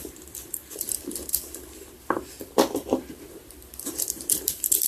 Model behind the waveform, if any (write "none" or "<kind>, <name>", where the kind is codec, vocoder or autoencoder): vocoder, BigVGAN v2